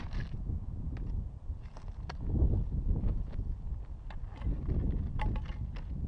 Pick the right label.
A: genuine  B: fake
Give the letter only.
A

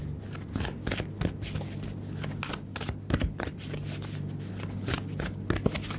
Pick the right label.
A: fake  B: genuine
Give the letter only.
B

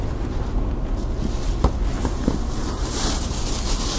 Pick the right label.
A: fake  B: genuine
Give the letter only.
B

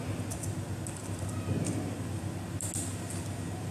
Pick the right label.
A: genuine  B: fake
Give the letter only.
A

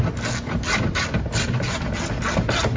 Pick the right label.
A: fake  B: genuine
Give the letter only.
B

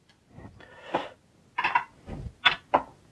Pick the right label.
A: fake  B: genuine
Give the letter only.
B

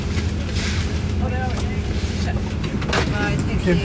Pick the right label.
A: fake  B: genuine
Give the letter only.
B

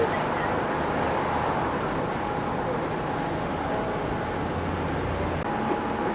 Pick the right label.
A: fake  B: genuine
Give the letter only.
B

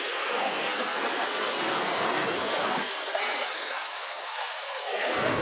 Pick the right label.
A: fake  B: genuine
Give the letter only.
A